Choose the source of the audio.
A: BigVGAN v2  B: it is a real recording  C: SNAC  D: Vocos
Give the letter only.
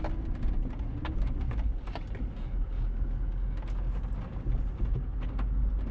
B